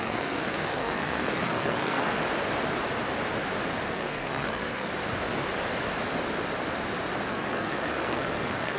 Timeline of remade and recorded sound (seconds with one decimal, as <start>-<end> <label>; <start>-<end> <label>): 0.0-2.2 remade; 2.2-3.9 recorded; 3.9-4.9 remade; 4.9-7.3 recorded; 7.3-8.8 remade